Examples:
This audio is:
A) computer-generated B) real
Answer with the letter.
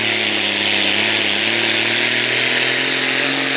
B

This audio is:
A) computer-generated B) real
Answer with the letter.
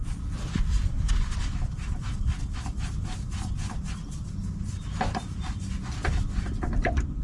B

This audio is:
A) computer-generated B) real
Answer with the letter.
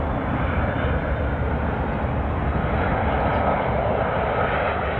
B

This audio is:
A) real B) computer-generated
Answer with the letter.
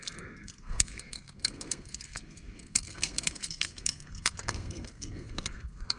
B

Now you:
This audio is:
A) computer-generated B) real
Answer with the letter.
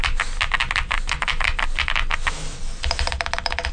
B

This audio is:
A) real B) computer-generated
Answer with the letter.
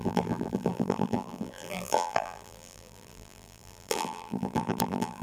B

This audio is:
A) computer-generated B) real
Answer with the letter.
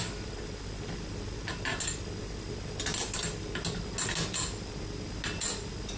B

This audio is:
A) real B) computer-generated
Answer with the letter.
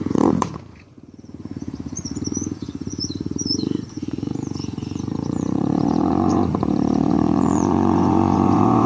B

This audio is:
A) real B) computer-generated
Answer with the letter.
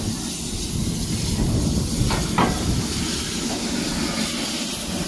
A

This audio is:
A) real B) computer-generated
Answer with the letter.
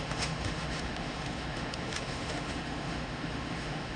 B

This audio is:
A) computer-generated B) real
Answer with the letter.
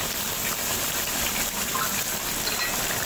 A